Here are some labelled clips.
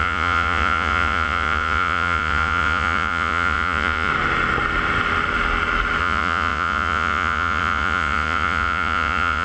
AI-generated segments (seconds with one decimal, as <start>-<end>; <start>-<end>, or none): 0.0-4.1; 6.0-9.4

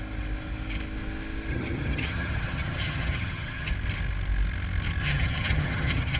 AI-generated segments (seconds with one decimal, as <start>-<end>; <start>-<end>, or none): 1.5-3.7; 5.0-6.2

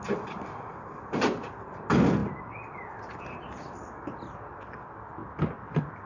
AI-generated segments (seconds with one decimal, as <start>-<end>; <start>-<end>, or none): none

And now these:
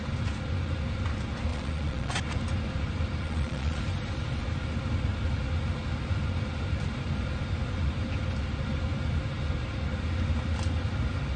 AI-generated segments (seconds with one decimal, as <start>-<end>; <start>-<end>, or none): 1.5-2.1; 3.2-3.8

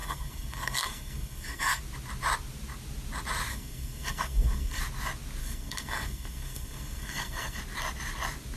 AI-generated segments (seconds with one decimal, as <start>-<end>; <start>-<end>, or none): 0.0-1.8; 3.5-4.8; 5.4-7.6

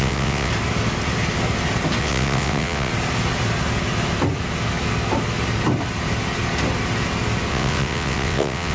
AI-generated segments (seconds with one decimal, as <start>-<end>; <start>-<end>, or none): 0.0-0.5; 2.0-2.9; 7.5-8.7

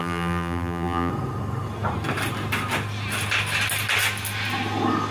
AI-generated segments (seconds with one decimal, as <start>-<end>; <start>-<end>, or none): 0.0-1.1